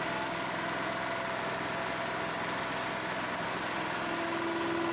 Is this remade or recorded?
recorded